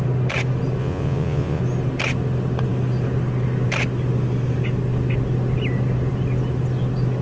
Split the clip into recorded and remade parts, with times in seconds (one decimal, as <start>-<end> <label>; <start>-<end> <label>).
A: 0.0-0.8 recorded; 0.8-1.6 remade; 1.6-7.2 recorded

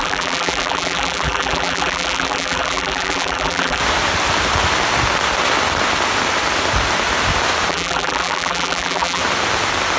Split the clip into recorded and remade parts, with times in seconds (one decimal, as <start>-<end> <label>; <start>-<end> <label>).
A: 0.0-3.8 remade; 3.8-7.7 recorded; 7.7-9.2 remade; 9.2-10.0 recorded

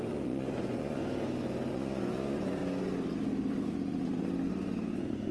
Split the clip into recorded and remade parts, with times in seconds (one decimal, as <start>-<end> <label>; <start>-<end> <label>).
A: 0.0-1.0 remade; 1.0-1.7 recorded; 1.7-2.6 remade; 2.6-5.3 recorded